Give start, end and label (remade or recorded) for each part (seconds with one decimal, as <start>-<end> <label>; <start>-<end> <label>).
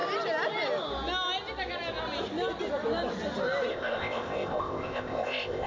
0.0-3.7 recorded; 3.7-5.7 remade